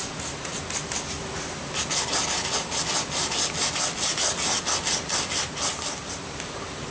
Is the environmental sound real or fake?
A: real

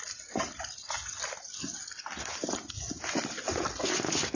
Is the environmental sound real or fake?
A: real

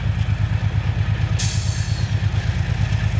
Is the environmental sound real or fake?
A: real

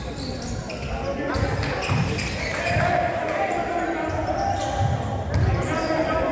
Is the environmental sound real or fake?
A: real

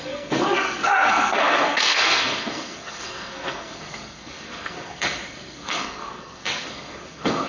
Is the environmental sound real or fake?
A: fake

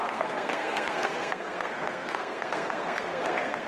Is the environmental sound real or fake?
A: fake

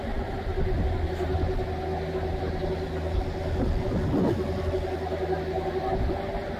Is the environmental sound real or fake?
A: real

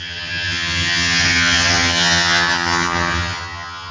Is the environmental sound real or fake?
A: fake